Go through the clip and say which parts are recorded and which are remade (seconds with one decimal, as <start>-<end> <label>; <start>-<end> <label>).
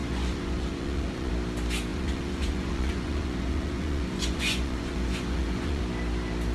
0.0-1.3 remade; 1.3-1.9 recorded; 1.9-5.8 remade; 5.8-6.5 recorded